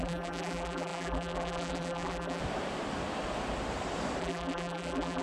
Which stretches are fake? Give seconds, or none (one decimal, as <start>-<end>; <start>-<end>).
0.0-2.4; 4.2-5.2